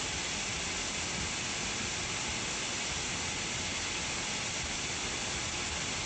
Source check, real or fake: real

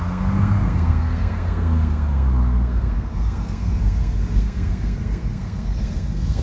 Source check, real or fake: fake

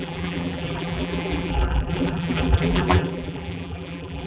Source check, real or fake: fake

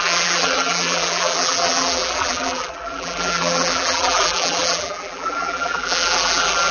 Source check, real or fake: fake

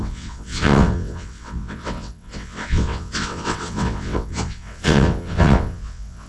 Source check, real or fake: fake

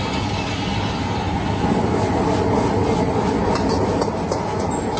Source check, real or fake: real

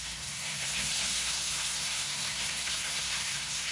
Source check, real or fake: fake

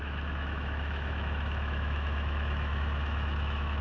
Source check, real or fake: fake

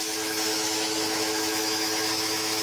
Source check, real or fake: fake